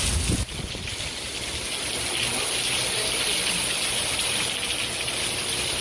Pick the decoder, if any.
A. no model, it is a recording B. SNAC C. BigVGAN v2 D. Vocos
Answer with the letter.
A